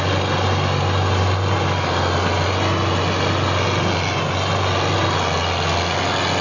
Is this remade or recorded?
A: recorded